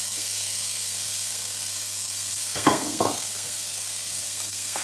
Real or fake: fake